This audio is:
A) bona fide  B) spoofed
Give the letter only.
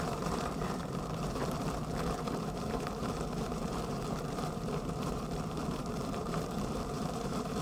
B